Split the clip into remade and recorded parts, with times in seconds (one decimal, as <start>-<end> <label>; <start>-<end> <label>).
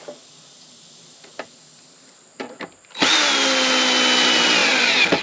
0.0-5.2 recorded